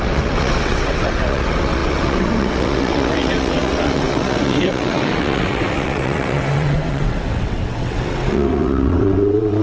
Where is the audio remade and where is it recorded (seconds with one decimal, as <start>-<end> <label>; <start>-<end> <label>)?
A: 0.0-9.6 remade